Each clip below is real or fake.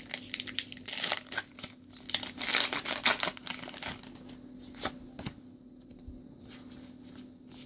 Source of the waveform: real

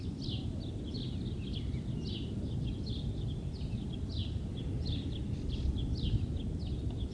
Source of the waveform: real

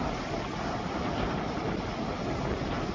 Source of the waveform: real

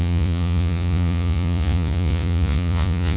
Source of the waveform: fake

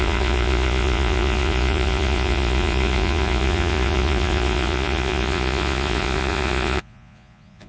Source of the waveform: fake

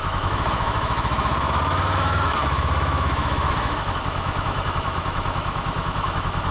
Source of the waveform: fake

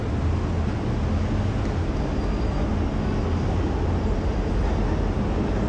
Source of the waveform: real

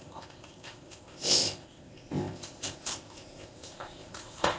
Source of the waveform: fake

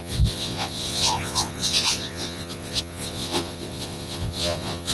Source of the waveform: fake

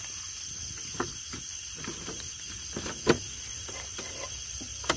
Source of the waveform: real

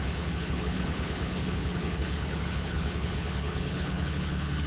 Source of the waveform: fake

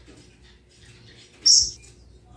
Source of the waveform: real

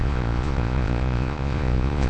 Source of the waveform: fake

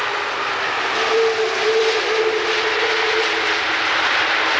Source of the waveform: fake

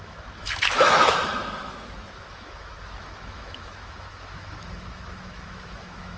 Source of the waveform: fake